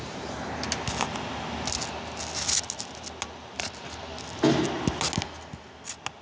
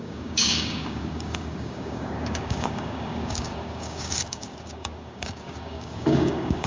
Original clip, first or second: first